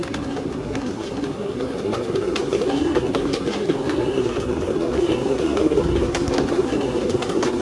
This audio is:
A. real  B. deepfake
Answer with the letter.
B